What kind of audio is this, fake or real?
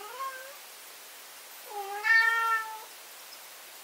real